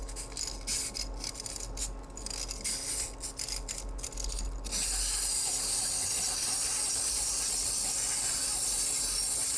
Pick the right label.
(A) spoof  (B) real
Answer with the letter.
B